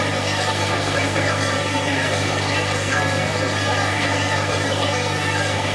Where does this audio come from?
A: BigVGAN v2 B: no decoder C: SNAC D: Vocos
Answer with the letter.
C